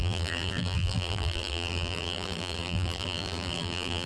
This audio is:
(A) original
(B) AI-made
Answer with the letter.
B